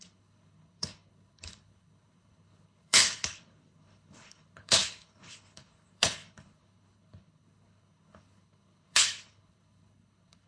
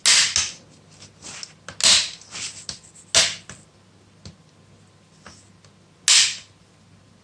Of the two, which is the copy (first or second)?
first